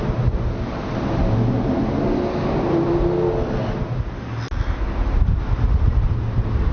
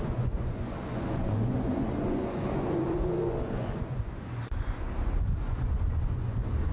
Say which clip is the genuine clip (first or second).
first